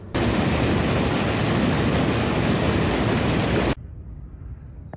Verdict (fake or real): real